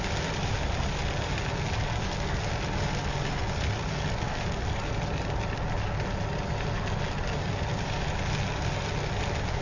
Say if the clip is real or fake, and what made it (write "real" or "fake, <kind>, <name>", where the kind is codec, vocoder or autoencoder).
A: real